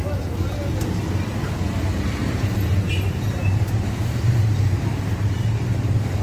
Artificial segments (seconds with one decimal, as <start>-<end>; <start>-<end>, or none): 2.2-6.2